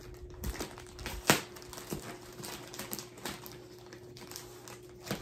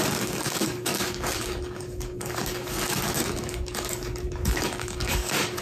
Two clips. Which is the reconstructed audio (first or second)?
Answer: second